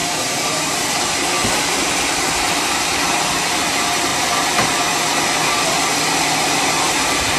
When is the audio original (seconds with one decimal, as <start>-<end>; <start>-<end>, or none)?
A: 4.1-6.8